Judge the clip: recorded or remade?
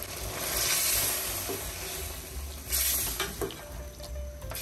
recorded